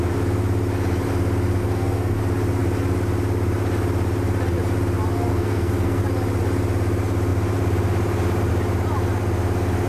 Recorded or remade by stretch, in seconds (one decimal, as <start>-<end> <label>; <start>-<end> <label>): 0.0-1.6 recorded; 1.6-2.2 remade; 2.2-5.3 recorded; 5.3-6.0 remade; 6.0-9.9 recorded